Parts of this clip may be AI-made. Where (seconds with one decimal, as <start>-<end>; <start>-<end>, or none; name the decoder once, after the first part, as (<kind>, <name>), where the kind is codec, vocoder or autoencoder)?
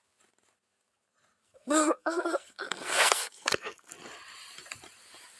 1.4-3.9 (codec, SNAC)